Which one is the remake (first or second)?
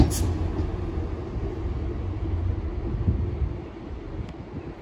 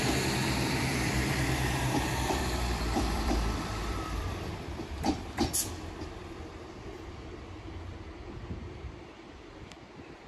second